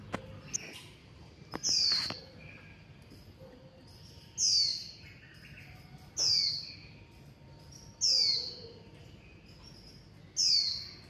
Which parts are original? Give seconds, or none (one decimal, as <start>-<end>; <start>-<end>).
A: 0.0-1.0; 2.2-11.1